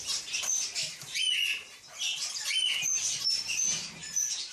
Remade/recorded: recorded